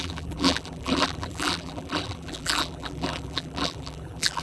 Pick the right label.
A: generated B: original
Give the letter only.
A